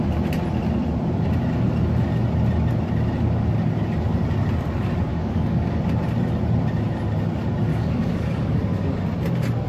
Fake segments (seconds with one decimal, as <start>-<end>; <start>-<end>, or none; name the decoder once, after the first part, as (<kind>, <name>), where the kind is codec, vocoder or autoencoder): 5.1-5.8 (codec, DAC); 7.7-8.6